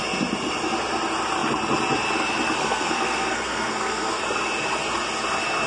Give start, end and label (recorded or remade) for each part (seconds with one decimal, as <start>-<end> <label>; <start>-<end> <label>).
0.0-2.6 recorded; 2.6-4.2 remade; 4.2-5.7 recorded